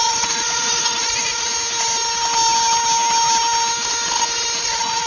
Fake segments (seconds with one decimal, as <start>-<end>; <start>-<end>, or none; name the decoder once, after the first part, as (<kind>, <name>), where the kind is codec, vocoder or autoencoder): 0.0-1.5 (vocoder, Vocos); 4.6-5.1